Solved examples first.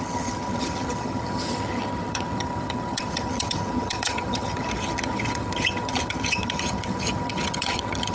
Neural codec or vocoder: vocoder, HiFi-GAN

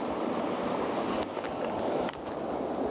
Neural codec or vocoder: none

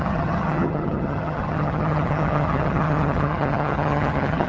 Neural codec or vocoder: vocoder, HiFi-GAN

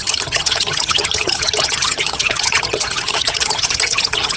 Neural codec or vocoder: vocoder, HiFi-GAN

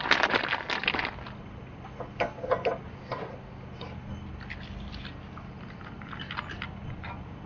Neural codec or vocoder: none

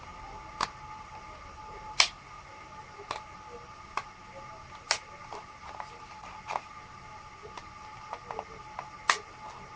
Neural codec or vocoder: none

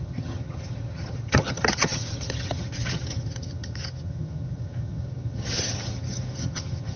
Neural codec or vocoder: vocoder, HiFi-GAN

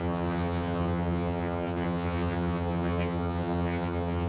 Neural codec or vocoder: vocoder, HiFi-GAN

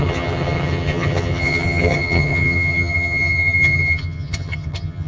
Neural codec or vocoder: vocoder, HiFi-GAN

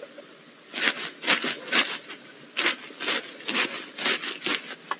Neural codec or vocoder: none